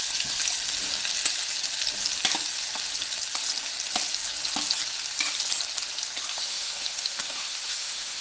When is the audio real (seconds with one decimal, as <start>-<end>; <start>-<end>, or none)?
0.0-6.3